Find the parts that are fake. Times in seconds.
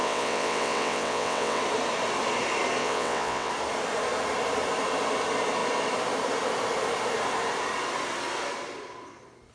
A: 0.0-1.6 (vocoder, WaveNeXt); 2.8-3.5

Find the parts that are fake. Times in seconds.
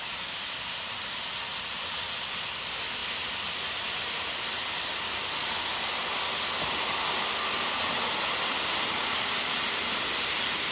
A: none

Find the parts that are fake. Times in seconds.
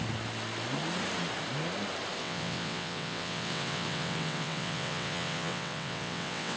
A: 2.2-6.6 (vocoder, WaveNeXt)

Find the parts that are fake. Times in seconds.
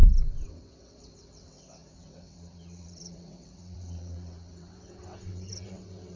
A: 0.5-6.2 (vocoder, WaveNeXt)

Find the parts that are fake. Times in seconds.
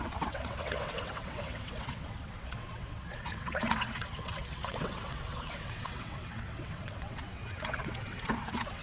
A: 0.0-8.8 (vocoder, WaveNeXt)